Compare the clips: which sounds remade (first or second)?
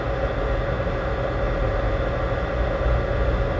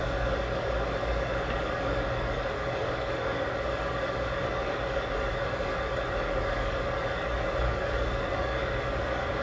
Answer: second